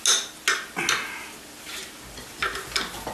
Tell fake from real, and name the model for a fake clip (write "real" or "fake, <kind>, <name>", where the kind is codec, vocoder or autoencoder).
real